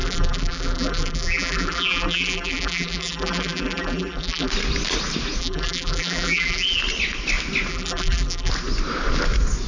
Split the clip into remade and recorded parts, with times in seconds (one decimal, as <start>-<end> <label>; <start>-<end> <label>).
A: 0.0-4.5 remade; 4.5-5.4 recorded; 5.4-6.8 remade; 6.8-7.7 recorded; 7.7-8.5 remade; 8.5-9.7 recorded